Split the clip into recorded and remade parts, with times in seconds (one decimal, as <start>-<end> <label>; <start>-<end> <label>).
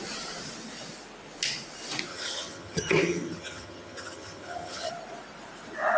0.0-2.1 recorded; 2.1-4.9 remade; 4.9-6.0 recorded